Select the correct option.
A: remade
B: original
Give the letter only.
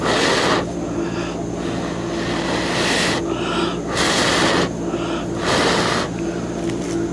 B